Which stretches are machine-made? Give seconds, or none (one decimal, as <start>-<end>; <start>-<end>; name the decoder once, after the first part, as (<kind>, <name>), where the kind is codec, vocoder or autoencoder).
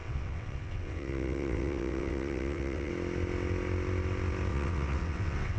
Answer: 0.0-2.9 (vocoder, WaveNeXt); 4.5-5.6